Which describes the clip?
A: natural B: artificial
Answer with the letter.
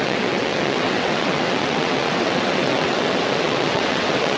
B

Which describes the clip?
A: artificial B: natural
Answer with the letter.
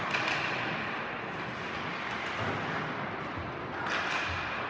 B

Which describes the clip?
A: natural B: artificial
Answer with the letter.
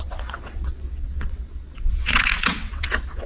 B